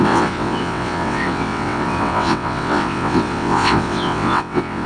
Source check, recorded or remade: remade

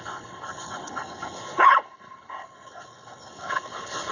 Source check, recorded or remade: remade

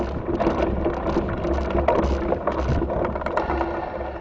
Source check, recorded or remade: recorded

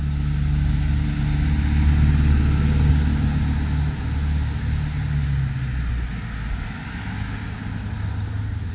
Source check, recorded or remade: recorded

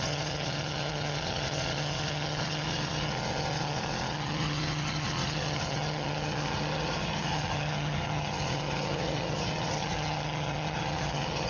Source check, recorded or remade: remade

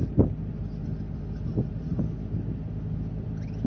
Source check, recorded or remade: recorded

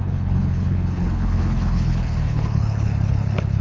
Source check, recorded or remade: remade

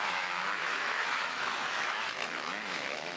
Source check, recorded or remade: remade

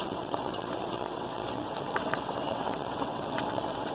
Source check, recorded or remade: remade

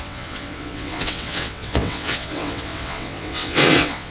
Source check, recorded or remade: remade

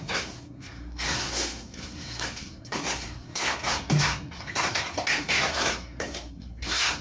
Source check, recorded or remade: remade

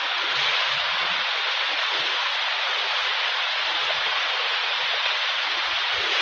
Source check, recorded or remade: remade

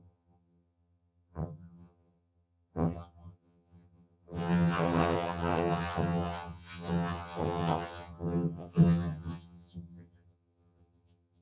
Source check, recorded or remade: remade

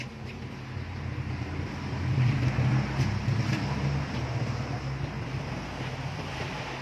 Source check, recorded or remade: recorded